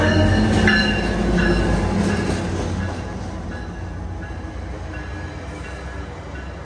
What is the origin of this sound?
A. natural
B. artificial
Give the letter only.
A